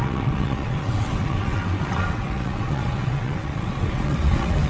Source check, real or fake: fake